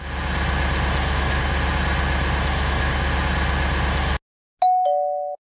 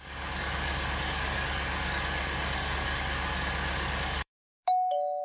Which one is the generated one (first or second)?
second